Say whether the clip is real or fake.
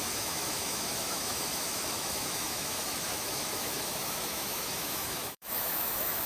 fake